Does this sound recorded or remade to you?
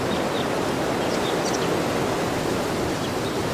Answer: recorded